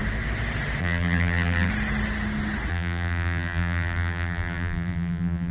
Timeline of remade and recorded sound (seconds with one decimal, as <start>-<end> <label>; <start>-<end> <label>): 0.0-0.8 recorded; 0.8-1.7 remade; 1.7-2.7 recorded; 2.7-5.5 remade